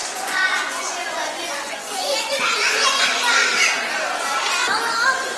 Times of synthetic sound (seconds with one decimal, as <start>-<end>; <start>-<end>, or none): 0.0-3.2